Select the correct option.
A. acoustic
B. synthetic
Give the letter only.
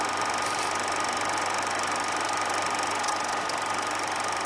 A